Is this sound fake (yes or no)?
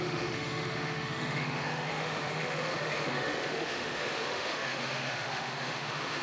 yes